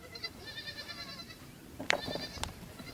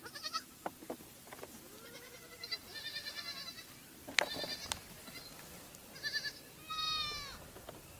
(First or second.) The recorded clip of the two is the second